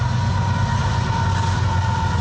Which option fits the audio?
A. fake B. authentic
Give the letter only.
B